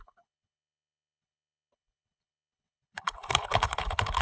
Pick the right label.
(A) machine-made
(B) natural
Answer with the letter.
A